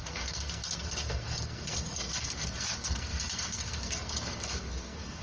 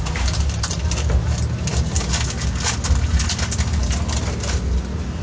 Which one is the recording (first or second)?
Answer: second